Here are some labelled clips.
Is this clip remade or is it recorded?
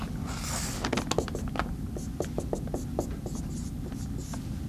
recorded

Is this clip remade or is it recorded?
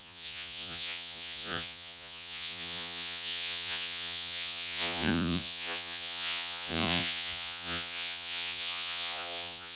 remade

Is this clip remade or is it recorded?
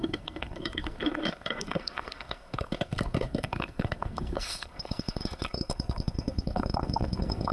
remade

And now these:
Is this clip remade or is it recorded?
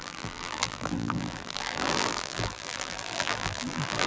remade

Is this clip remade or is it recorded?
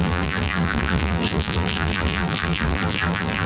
remade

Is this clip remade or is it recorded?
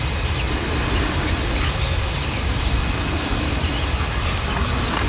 remade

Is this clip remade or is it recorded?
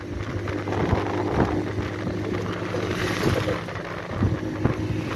recorded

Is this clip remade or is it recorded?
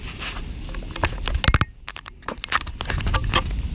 recorded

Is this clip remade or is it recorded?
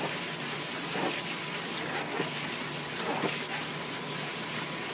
recorded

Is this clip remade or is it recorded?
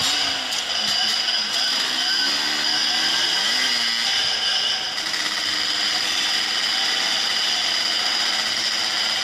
recorded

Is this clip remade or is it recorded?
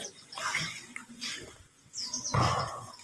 remade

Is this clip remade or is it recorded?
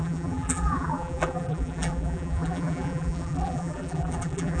remade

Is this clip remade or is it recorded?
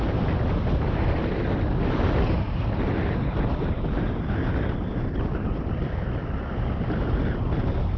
recorded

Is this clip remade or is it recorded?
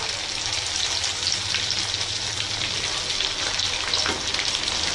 recorded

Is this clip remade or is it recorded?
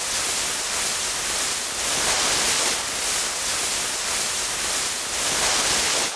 recorded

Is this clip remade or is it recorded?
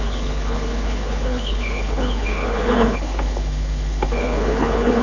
remade